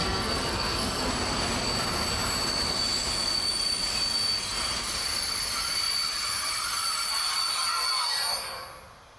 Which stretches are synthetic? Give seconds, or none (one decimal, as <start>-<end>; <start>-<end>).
0.0-1.1